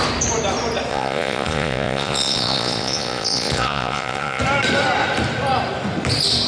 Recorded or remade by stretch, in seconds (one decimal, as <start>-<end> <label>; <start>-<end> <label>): 0.0-0.9 recorded; 0.9-4.4 remade; 4.4-6.5 recorded